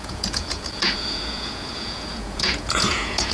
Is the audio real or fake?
fake